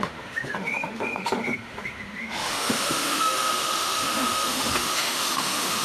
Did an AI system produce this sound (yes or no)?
yes